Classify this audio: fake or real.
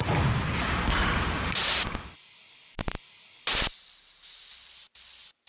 real